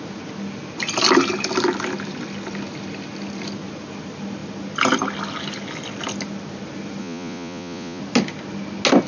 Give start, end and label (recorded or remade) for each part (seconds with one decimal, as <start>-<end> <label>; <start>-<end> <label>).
0.0-7.0 recorded; 7.0-8.0 remade; 8.0-9.1 recorded